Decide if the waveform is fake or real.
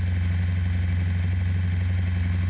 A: real